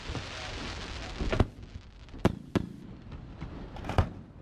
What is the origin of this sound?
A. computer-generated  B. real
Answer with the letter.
B